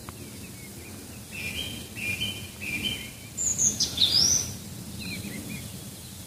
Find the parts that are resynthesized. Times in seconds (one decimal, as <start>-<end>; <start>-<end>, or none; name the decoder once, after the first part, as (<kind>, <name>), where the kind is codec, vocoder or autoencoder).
none